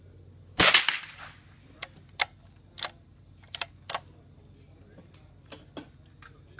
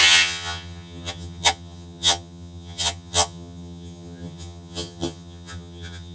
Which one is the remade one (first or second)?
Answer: second